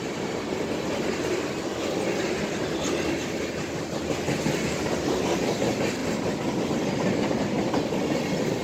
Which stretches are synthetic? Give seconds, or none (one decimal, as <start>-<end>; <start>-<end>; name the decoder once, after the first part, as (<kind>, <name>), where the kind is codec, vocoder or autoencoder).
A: none

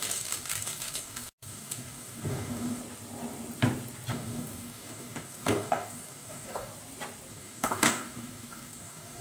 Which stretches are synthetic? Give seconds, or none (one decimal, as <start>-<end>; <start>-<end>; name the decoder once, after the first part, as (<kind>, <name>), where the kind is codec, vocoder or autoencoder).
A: 0.0-2.8 (codec, DAC); 4.1-6.7; 7.3-9.2

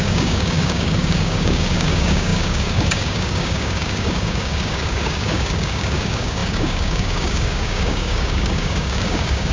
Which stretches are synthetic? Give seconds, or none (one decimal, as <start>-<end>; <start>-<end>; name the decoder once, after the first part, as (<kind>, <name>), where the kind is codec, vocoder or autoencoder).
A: 0.0-9.5 (codec, DAC)

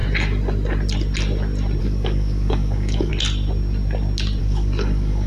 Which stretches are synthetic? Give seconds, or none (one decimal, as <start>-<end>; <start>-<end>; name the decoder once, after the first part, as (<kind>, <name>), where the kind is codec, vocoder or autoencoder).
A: 1.8-3.1 (codec, DAC); 4.4-5.3

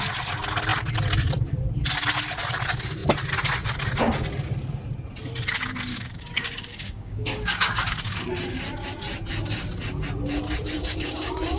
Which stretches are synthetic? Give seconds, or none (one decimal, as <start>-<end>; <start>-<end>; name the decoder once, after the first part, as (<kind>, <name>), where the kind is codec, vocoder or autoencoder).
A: 5.9-8.3 (codec, DAC); 10.8-11.6